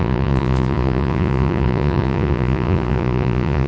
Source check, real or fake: fake